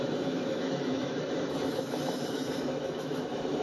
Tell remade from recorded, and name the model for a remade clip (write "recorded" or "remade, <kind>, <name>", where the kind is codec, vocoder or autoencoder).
remade, autoencoder, DAC-VAE